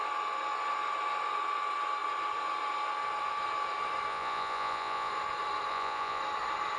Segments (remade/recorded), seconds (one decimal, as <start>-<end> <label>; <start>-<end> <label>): 0.0-4.1 recorded; 4.1-5.1 remade; 5.1-5.7 recorded; 5.7-6.2 remade; 6.2-6.8 recorded